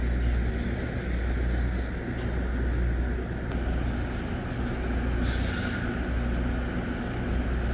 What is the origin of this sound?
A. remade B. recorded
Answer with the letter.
B